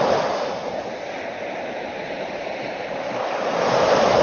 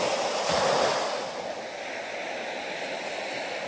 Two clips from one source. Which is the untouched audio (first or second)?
second